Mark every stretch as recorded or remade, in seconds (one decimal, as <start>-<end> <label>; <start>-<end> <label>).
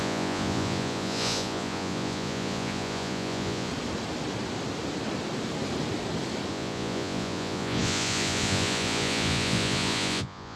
0.0-3.7 remade; 3.7-6.5 recorded; 6.5-10.6 remade